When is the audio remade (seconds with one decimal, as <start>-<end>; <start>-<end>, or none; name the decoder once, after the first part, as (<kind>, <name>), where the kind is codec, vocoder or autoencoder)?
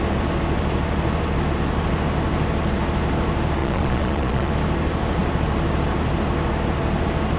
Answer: 3.6-4.5 (vocoder, Vocos)